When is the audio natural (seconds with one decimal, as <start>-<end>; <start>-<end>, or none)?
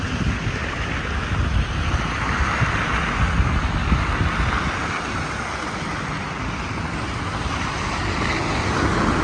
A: 0.0-9.2